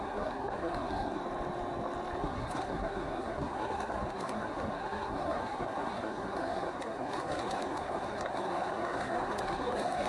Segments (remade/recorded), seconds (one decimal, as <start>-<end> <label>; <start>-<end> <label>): 0.0-1.2 remade; 1.2-2.2 recorded; 2.2-10.1 remade